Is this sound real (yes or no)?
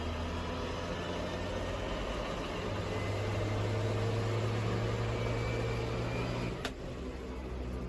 yes